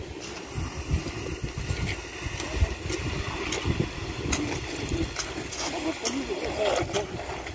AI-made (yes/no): no